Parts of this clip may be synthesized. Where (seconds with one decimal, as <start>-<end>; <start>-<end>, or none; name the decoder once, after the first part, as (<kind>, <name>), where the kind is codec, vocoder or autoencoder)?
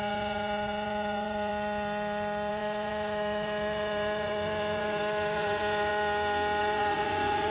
0.0-1.5 (vocoder, Vocos); 2.5-5.9; 6.6-7.5